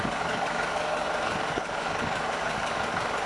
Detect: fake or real fake